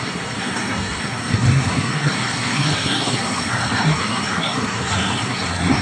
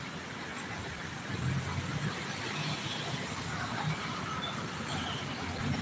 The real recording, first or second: second